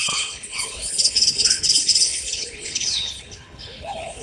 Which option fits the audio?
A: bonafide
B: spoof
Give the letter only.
B